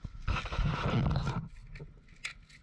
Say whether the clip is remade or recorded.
recorded